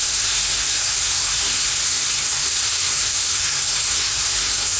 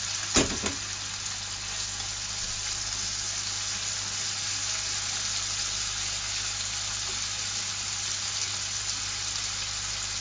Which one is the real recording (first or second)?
second